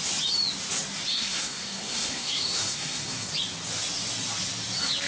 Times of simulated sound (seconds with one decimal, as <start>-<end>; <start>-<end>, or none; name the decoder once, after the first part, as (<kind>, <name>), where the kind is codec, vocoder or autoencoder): 1.1-3.3 (codec, SNAC)